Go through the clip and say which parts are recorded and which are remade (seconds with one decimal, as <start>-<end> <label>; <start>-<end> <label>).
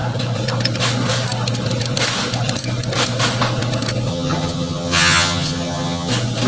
0.0-4.1 recorded; 4.1-6.1 remade; 6.1-6.5 recorded